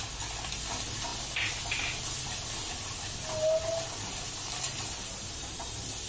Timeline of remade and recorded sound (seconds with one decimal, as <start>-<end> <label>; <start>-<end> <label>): 0.0-6.1 recorded